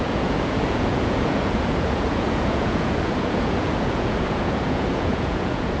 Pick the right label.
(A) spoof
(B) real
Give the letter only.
A